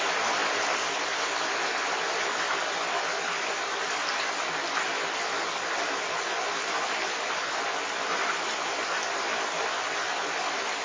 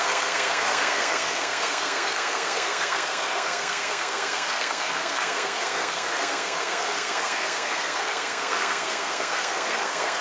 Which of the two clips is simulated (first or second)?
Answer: second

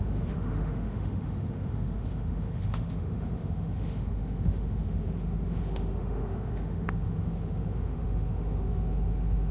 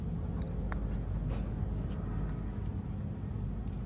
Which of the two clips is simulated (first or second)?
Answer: first